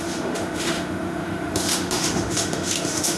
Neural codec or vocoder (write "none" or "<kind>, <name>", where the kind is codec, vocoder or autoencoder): autoencoder, DAC-VAE